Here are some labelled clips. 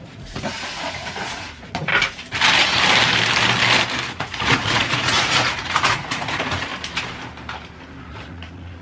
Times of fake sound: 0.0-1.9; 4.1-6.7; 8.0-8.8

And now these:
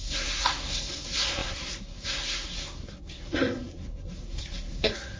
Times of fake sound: 0.0-5.2

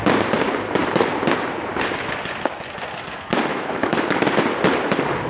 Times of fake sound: 3.5-4.0

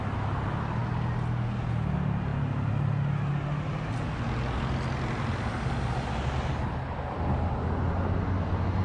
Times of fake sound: none